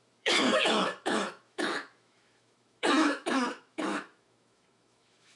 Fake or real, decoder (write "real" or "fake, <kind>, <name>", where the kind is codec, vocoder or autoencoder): fake, autoencoder, DAC-VAE